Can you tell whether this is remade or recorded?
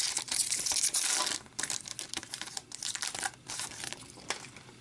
remade